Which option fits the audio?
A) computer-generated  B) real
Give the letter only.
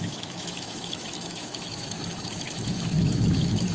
A